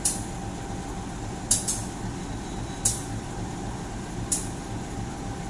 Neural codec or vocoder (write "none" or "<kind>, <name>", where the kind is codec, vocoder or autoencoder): none